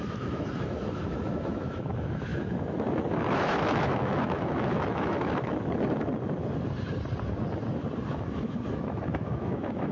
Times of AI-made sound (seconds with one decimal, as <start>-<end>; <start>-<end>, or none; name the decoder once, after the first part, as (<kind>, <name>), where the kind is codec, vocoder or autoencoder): 0.0-6.1 (autoencoder, DAC-VAE); 8.1-9.9